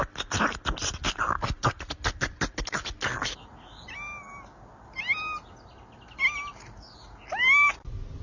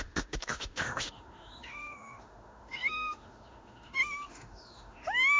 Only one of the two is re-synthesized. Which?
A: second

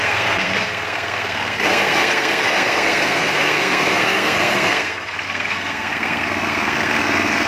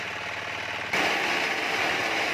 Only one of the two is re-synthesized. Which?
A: first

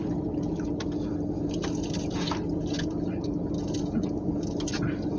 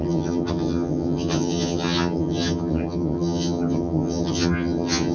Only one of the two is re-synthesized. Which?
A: second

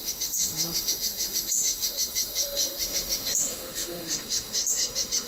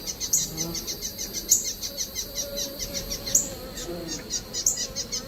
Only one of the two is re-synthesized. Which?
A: first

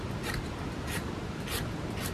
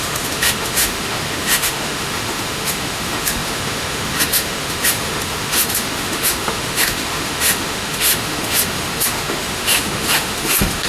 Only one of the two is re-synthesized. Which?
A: second